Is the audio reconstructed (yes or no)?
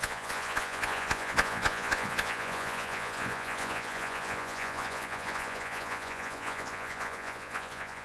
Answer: yes